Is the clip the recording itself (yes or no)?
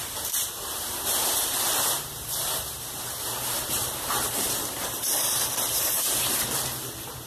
no